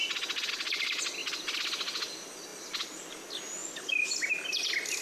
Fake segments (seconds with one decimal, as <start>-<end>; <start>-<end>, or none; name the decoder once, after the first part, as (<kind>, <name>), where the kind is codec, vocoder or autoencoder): 1.2-1.8 (vocoder, BigVGAN v2); 2.5-3.0